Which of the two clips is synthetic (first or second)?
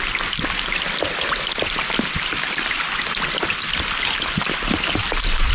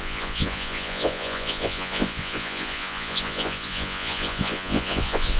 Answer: second